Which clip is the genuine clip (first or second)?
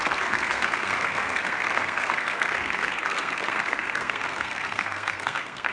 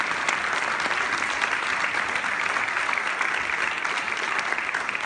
second